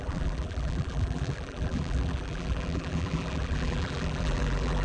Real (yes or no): no